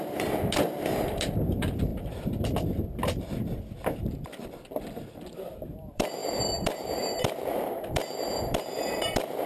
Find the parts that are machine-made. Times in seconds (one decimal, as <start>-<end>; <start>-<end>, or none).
0.0-1.9; 4.0-9.5